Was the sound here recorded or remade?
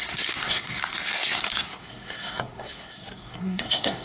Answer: remade